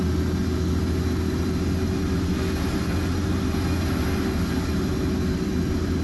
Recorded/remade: recorded